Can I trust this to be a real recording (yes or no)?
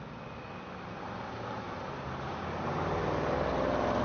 yes